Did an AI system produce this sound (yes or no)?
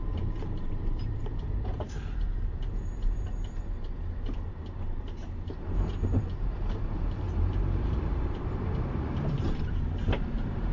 yes